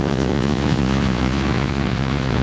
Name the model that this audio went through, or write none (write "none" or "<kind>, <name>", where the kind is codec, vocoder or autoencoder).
vocoder, Vocos